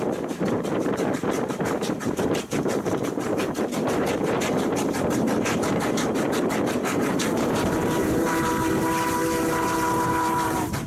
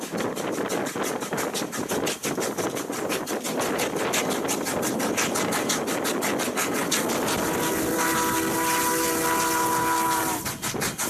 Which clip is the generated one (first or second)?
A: first